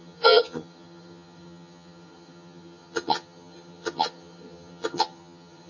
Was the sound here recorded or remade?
remade